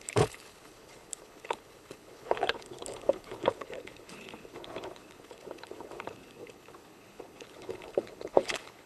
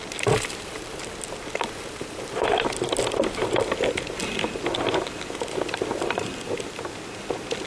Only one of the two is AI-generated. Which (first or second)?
first